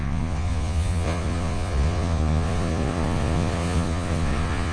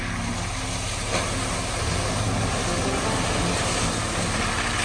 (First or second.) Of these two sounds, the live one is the second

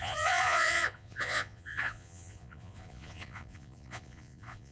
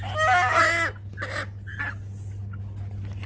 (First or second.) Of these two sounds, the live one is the second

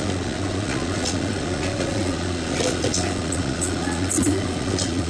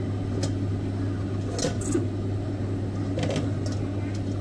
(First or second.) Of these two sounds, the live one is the second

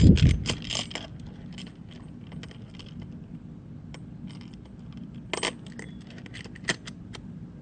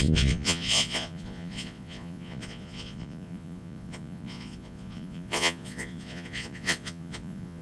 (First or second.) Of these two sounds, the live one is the first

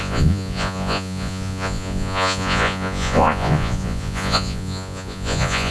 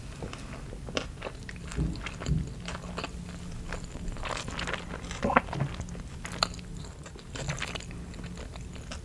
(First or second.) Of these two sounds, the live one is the second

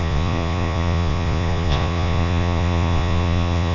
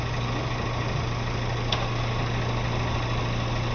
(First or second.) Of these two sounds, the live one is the second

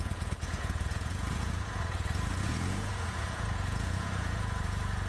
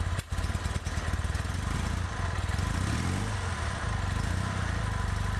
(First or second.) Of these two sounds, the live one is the second